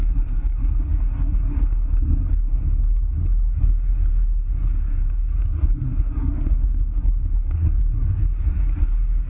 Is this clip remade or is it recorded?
remade